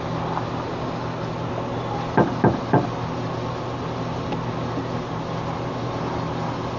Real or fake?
real